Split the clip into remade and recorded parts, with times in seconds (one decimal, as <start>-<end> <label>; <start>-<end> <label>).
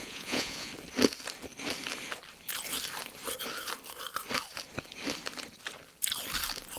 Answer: 0.0-0.7 remade; 0.7-6.8 recorded